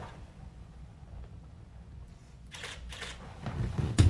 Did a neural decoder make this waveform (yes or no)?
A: yes